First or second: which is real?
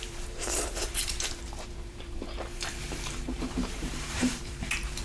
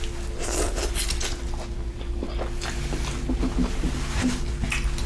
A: second